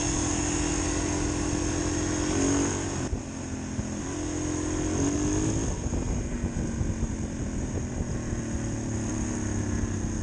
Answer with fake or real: real